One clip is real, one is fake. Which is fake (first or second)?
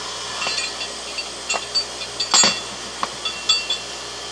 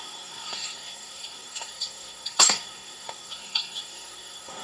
second